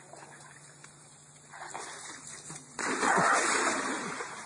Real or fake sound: real